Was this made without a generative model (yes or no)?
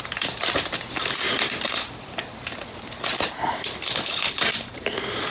no